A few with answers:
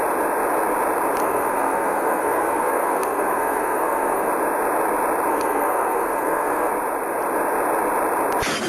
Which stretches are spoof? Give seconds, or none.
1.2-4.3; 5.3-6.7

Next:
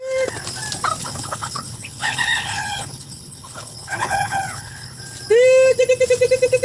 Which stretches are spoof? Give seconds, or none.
1.0-5.0

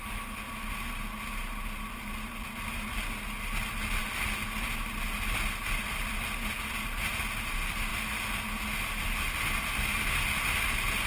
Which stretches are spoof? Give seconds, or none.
none

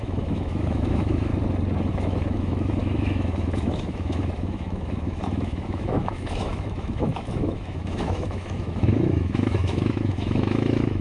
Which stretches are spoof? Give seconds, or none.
0.0-1.3; 1.9-11.0

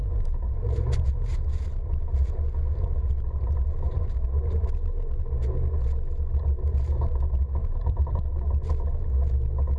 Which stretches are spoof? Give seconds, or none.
0.0-5.2; 7.6-8.2

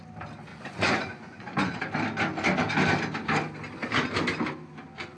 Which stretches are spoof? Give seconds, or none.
0.5-1.8

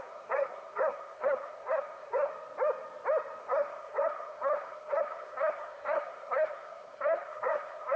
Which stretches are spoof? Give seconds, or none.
0.0-2.3; 3.4-8.0